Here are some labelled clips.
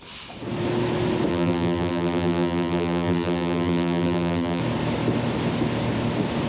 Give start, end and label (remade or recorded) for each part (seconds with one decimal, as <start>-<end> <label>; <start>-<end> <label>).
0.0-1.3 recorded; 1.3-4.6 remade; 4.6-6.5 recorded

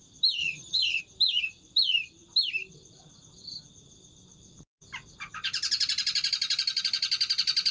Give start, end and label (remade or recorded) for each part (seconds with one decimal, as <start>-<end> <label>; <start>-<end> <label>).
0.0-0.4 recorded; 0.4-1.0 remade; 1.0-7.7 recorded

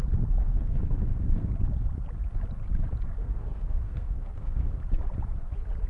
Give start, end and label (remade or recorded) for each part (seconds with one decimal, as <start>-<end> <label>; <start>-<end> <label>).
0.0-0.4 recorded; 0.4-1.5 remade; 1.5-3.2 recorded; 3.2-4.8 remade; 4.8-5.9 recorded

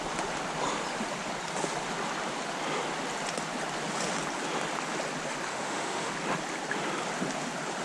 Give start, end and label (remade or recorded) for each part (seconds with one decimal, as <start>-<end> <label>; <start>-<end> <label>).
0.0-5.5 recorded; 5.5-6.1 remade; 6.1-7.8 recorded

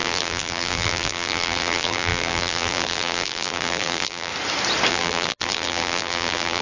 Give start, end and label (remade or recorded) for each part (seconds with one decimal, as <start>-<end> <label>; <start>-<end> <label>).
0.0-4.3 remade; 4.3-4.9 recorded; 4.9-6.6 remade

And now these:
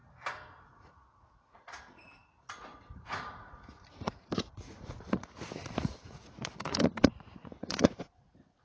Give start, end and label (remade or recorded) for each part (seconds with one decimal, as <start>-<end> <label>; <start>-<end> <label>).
0.0-0.6 recorded; 0.6-8.6 remade